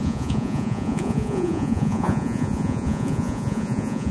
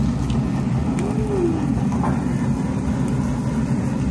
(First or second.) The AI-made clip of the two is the first